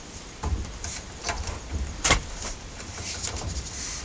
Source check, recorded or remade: remade